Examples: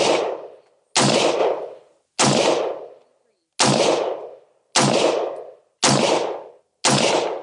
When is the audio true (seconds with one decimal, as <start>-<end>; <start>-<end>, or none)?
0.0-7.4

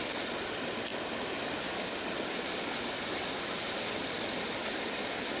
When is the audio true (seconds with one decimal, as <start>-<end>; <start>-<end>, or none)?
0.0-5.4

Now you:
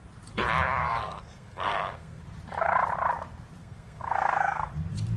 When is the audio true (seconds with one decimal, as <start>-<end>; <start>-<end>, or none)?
0.0-0.8; 2.2-3.6; 4.7-5.2